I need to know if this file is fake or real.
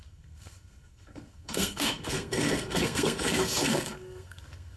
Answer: fake